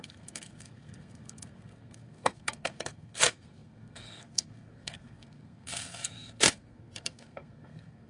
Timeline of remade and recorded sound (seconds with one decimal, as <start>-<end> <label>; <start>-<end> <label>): 0.0-8.1 remade